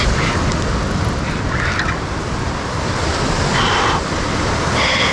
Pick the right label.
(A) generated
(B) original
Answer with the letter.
B